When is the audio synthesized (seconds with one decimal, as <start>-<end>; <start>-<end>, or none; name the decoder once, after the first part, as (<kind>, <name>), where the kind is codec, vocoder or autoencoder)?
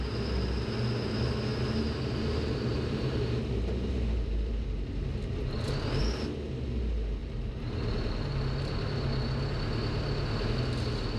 2.7-6.0 (vocoder, BigVGAN v2); 7.2-8.3